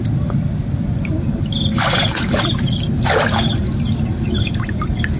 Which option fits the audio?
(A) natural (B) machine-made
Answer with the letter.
A